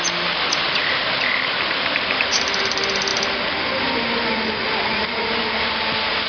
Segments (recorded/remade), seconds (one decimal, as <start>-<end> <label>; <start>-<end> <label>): 0.0-0.8 recorded; 0.8-2.6 remade; 2.6-4.9 recorded; 4.9-5.7 remade; 5.7-6.3 recorded